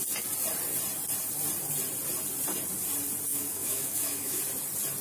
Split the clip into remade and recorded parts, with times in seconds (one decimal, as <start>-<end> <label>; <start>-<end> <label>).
0.0-3.3 recorded; 3.3-4.4 remade; 4.4-5.0 recorded